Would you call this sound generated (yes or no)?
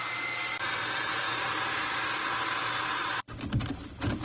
no